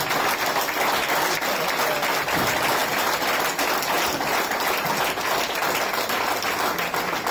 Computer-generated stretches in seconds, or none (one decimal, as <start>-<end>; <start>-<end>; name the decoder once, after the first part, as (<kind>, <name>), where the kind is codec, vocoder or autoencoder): none